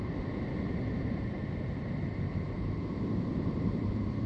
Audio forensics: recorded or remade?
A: remade